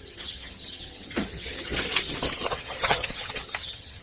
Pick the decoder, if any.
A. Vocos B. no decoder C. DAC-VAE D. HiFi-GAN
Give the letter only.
D